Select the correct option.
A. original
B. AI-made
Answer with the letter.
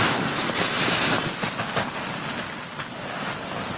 A